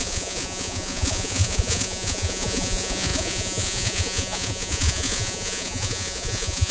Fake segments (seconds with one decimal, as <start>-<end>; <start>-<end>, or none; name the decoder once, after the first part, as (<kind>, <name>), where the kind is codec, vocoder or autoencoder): 0.0-6.7 (vocoder, Vocos)